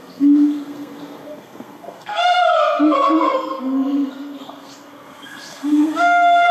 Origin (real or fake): fake